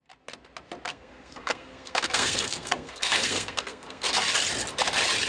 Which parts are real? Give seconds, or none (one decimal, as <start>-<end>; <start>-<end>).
0.0-0.9; 4.1-5.3